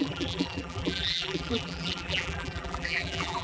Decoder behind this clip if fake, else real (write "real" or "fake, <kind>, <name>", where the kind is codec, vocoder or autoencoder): fake, vocoder, BigVGAN v2